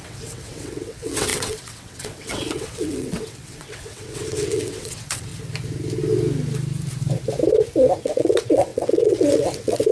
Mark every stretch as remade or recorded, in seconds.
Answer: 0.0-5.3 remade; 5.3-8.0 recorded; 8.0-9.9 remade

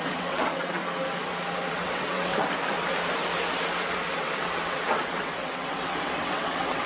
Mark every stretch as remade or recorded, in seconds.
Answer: 0.0-0.8 remade; 0.8-1.7 recorded; 1.7-2.3 remade; 2.3-4.1 recorded; 4.1-6.9 remade

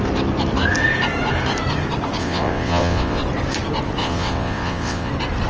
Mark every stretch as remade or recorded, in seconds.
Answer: 0.0-2.2 recorded; 2.2-3.2 remade; 3.2-4.0 recorded; 4.0-5.1 remade; 5.1-5.5 recorded

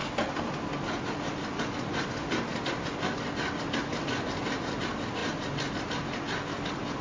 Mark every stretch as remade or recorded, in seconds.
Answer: 0.0-7.0 recorded

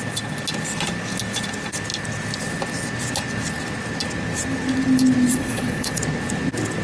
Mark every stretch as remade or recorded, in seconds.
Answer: 0.0-5.3 recorded; 5.3-6.0 remade; 6.0-6.8 recorded